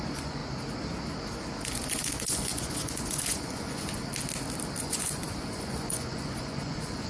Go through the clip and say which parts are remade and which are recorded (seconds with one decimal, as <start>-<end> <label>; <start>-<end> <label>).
0.0-0.4 remade; 0.4-1.6 recorded; 1.6-4.0 remade; 4.0-4.8 recorded; 4.8-7.1 remade